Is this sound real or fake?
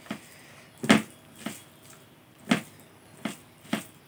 real